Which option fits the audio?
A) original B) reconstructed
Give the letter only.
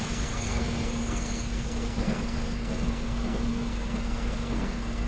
B